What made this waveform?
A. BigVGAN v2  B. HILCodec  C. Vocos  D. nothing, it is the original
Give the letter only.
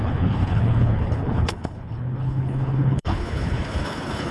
B